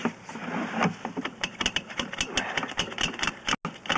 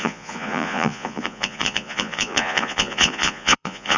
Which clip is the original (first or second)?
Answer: first